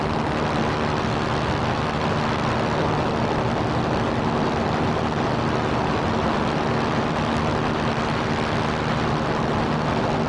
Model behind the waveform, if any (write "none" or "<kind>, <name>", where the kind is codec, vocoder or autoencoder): none